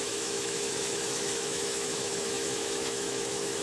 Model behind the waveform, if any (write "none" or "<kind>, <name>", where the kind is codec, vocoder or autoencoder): autoencoder, DAC-VAE